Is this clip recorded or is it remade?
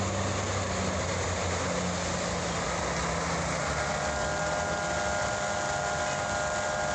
recorded